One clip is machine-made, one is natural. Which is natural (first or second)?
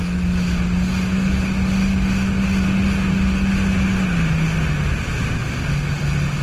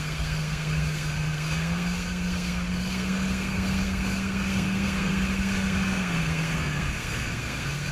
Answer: first